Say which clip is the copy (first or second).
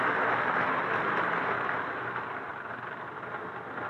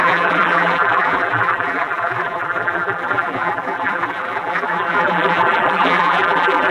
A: second